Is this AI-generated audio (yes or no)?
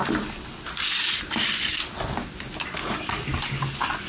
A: no